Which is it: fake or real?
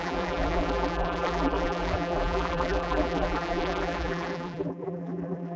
fake